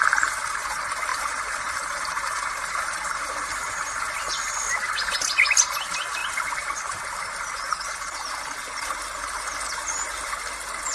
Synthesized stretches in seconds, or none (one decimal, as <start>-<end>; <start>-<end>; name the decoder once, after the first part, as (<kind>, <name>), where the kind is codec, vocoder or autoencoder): 1.1-3.9 (vocoder, BigVGAN v2)